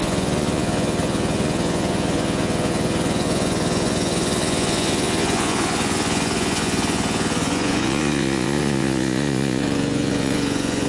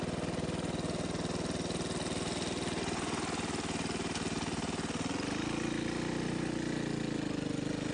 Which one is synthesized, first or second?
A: first